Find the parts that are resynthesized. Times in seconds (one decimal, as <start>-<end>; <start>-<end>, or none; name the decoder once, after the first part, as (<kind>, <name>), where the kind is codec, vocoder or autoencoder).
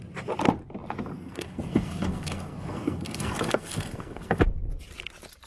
1.1-4.4 (codec, SNAC)